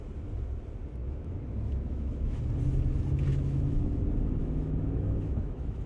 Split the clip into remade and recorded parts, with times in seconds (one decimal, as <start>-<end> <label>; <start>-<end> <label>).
0.0-1.0 recorded; 1.0-2.4 remade; 2.4-3.3 recorded; 3.3-4.0 remade; 4.0-4.4 recorded; 4.4-5.9 remade